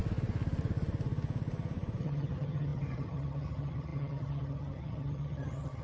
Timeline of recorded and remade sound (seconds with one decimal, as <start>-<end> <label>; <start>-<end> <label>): 0.0-2.0 recorded; 2.0-5.8 remade